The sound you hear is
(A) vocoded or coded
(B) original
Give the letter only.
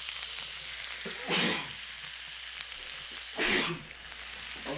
B